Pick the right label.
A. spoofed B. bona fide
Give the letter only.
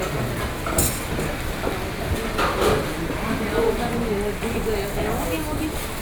B